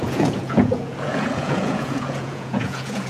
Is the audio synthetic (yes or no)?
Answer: yes